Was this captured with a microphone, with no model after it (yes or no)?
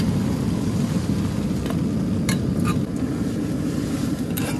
yes